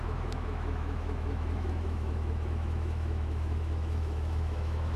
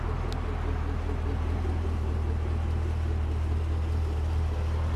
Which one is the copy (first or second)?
first